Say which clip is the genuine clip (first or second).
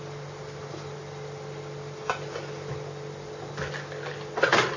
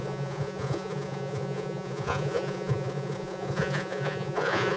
first